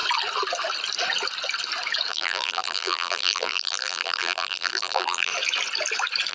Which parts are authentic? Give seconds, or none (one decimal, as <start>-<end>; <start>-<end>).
0.0-2.1; 5.3-6.3